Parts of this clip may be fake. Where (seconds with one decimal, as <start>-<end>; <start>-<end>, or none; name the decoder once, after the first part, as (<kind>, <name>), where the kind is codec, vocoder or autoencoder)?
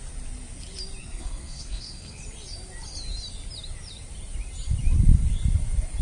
1.0-2.2 (codec, SNAC)